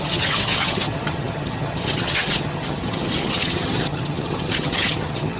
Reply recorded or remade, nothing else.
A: remade